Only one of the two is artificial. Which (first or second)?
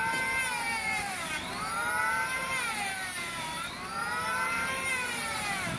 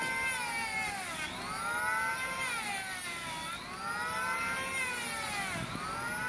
first